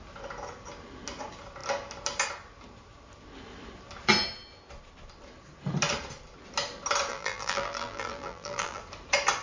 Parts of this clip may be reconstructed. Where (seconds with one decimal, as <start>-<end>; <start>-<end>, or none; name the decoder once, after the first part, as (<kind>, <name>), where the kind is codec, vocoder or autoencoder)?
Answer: 7.1-8.8 (vocoder, BigVGAN v2)